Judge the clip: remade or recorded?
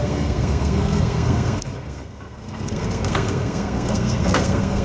remade